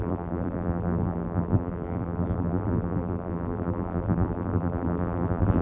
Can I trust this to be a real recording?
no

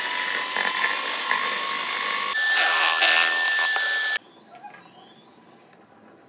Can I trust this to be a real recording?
yes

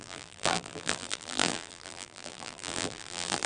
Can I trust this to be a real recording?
no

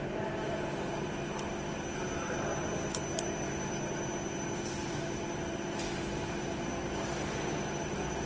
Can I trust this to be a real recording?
no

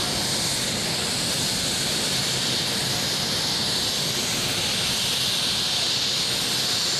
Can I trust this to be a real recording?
yes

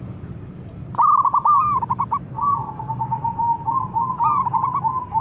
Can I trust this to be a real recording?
yes